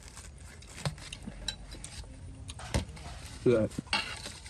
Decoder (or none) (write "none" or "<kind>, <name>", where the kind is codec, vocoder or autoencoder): none